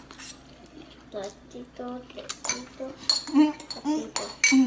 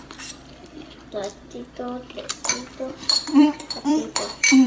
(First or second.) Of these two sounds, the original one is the first